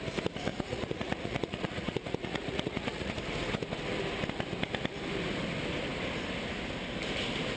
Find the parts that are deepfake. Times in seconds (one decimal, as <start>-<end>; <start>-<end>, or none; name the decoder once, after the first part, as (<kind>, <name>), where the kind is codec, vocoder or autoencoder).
0.5-3.1 (vocoder, Vocos)